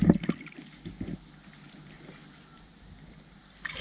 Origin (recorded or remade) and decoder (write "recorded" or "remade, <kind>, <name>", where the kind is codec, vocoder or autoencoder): recorded